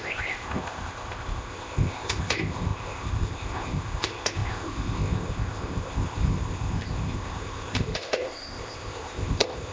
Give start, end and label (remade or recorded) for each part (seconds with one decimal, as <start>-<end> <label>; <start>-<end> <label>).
0.0-9.7 remade